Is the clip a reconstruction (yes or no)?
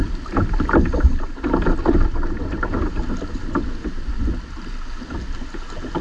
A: no